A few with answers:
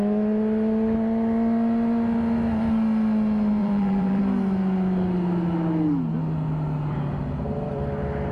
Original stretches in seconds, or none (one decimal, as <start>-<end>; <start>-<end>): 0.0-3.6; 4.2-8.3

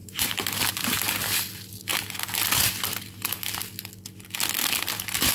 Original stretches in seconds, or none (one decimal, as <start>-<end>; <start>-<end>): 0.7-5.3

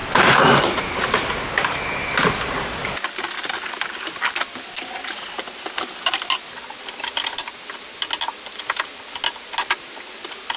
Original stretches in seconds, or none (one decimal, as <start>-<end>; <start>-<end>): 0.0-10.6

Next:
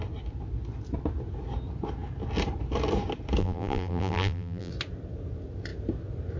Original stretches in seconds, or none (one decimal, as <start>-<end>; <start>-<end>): 0.0-3.4; 4.7-6.4

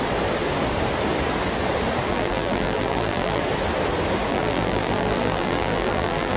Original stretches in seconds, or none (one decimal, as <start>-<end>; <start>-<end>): 0.0-2.1; 3.4-4.3

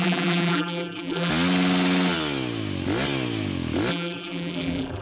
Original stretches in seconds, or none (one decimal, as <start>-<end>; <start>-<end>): 1.3-3.9